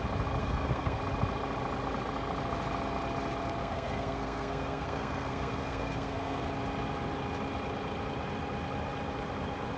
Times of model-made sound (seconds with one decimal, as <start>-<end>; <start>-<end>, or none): 0.4-1.0; 3.6-6.4